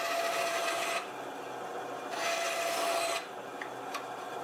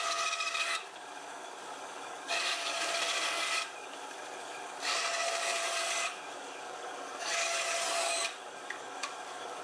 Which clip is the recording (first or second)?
first